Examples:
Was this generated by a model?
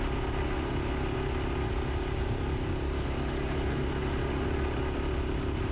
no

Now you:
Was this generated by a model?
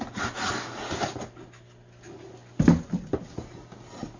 no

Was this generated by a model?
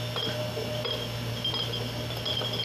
no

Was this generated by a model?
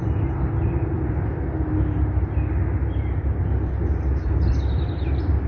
no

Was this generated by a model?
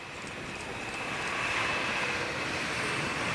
no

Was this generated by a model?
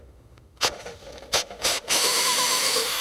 yes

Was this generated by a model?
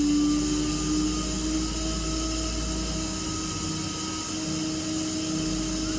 no